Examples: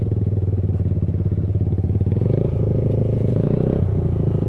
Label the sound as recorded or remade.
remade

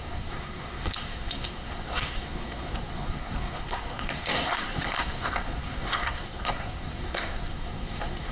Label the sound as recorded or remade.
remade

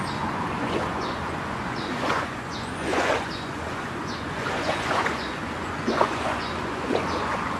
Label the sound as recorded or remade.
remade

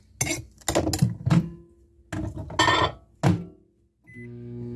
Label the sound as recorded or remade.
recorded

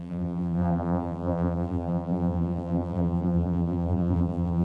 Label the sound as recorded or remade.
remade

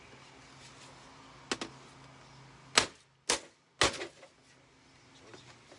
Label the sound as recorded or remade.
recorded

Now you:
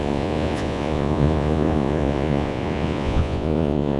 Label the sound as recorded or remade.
remade